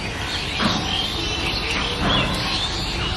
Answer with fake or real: real